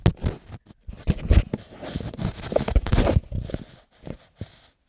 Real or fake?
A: real